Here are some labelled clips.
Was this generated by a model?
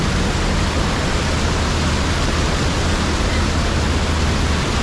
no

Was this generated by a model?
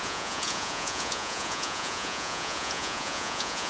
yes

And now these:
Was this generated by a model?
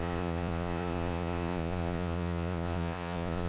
yes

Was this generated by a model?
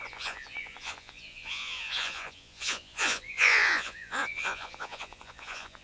yes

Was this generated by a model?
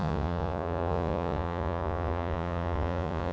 yes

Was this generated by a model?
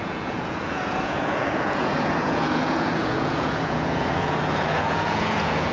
yes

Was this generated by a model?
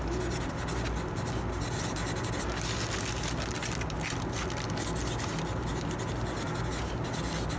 no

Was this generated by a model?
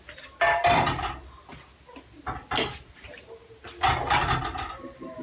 no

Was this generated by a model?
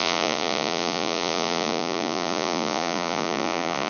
yes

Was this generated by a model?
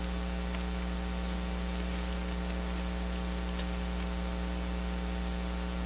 no